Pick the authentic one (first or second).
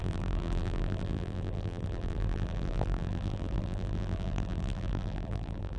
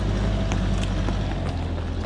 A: second